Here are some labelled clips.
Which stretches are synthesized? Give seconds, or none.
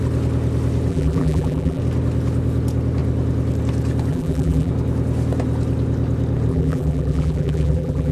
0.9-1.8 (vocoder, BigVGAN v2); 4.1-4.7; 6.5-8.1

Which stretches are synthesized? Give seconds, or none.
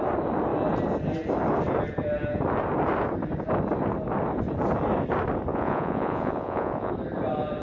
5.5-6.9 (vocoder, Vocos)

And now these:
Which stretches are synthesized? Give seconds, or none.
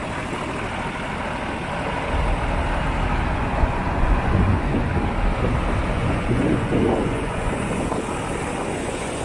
3.3-4.9 (vocoder, Vocos); 5.9-7.9; 8.7-9.2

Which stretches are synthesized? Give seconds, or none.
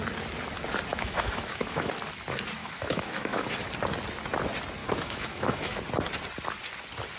0.9-1.9 (autoencoder, DAC-VAE); 2.6-3.5; 4.8-5.8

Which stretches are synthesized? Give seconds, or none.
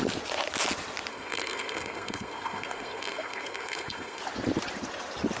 1.1-4.2 (codec, SNAC)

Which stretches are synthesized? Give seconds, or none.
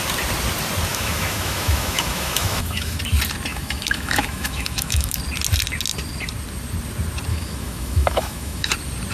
0.9-3.0 (autoencoder, DAC-VAE); 3.5-5.2; 7.3-8.7